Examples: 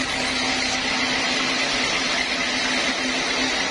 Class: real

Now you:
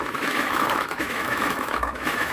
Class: fake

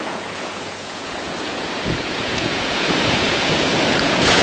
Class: fake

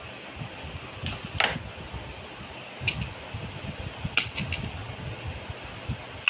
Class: real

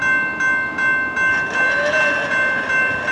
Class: real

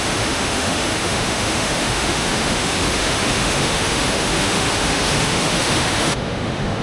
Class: fake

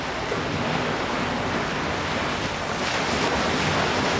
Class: real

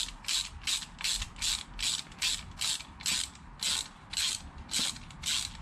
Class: real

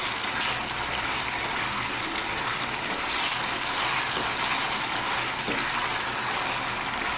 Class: real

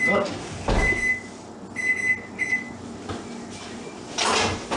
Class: real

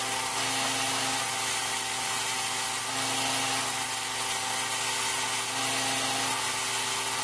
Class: real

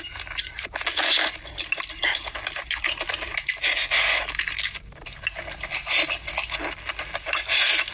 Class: real